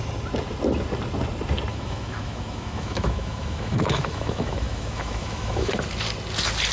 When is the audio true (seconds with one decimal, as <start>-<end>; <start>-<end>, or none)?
0.0-1.7; 5.7-6.7